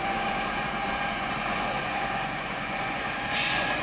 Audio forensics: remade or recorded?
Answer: remade